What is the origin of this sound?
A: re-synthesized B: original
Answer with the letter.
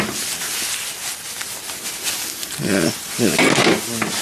B